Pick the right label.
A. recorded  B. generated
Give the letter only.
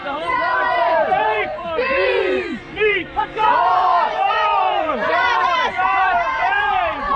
B